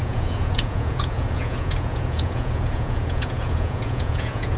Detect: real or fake fake